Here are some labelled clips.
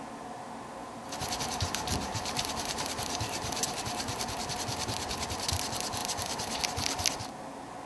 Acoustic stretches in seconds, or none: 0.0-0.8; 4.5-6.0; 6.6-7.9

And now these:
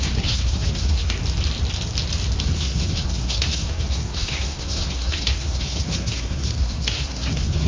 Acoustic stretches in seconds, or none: 1.2-2.4